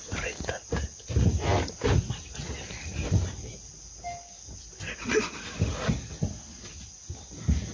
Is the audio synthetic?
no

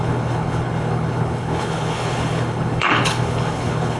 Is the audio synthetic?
yes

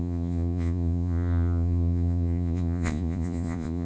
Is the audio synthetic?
yes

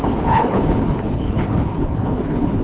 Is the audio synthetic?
yes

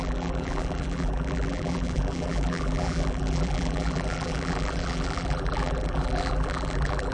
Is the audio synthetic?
yes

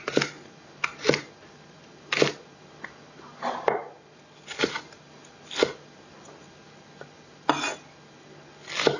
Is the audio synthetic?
no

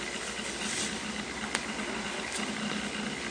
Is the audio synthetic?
no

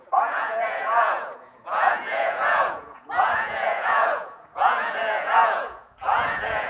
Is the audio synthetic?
yes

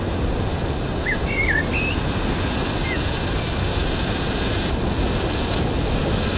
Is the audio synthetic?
no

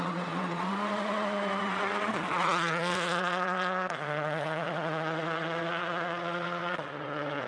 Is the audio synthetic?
yes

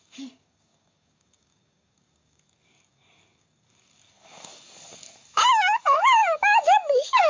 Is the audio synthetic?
yes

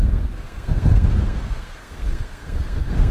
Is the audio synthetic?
yes